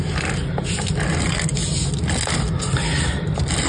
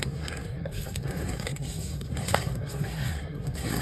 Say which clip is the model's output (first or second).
second